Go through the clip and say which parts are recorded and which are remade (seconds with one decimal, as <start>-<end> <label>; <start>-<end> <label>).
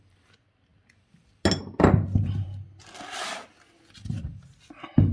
0.0-5.1 recorded